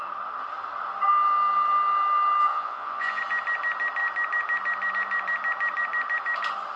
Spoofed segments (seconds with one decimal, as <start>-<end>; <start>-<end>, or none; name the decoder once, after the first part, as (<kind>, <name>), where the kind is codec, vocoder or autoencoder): 2.5-3.2 (vocoder, Vocos)